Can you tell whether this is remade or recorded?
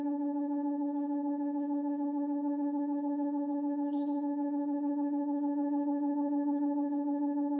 remade